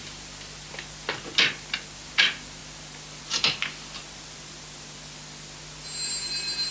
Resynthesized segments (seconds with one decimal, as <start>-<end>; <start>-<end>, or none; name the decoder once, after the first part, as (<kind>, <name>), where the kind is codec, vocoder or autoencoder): none